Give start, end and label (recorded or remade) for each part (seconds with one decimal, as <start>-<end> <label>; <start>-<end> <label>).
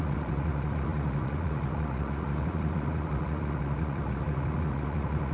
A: 0.0-5.3 remade